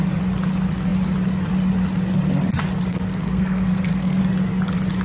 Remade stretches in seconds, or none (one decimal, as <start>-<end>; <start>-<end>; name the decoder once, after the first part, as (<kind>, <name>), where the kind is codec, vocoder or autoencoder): 2.9-4.2 (codec, SNAC)